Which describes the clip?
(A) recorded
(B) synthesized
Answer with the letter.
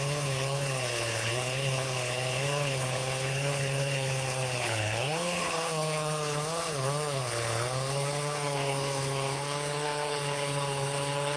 B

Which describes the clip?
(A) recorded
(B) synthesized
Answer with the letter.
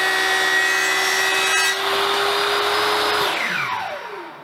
A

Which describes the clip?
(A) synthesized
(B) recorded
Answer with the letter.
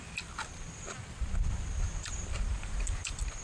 B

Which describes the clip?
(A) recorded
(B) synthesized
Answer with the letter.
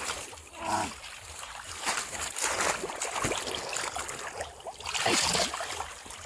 A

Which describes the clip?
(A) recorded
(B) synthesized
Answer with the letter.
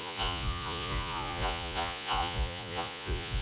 B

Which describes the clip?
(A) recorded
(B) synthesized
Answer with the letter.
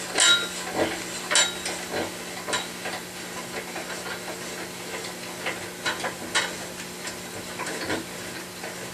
A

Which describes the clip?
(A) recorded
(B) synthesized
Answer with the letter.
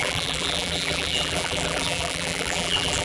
B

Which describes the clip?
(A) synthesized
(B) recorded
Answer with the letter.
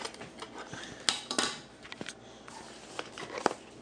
B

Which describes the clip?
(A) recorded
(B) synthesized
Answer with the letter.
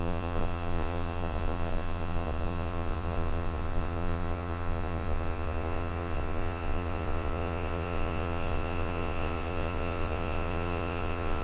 B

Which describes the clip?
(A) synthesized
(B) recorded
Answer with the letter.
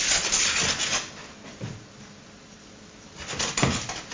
B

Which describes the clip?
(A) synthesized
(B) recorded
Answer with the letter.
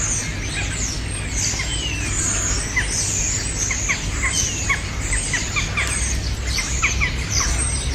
B